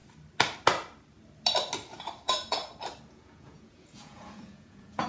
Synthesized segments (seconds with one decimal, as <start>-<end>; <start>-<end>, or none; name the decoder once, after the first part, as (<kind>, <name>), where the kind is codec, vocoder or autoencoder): 2.2-2.6 (vocoder, Vocos); 3.1-5.1